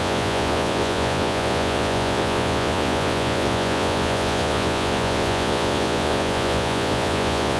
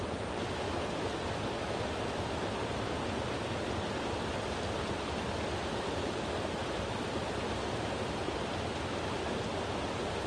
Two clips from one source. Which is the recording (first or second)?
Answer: second